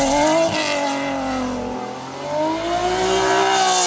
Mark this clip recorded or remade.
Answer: recorded